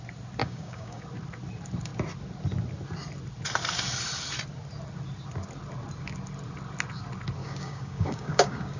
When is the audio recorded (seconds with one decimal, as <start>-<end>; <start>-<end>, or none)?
0.0-0.4; 1.0-7.4